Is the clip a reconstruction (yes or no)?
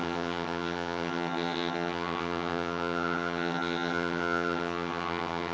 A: yes